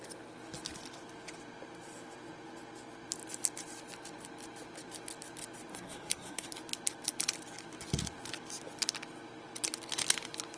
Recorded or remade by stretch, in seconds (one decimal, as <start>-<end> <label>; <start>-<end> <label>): 0.0-5.7 recorded; 5.7-6.5 remade; 6.5-10.6 recorded

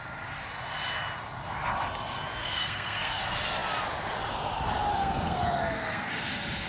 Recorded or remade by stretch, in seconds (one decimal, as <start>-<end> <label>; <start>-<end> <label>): 0.0-2.4 recorded; 2.4-3.2 remade; 3.2-4.9 recorded; 4.9-6.1 remade; 6.1-6.7 recorded

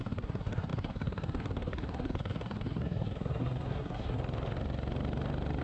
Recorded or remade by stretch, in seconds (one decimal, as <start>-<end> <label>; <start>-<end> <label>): 0.0-4.2 remade; 4.2-5.6 recorded

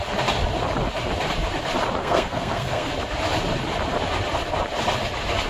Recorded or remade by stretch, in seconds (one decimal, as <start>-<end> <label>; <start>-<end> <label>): 0.0-2.0 recorded; 2.0-2.9 remade; 2.9-5.5 recorded